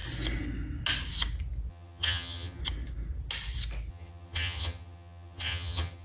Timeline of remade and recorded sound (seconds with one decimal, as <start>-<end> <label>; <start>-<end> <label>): 0.0-1.7 recorded; 1.7-2.6 remade; 2.6-3.9 recorded; 3.9-6.0 remade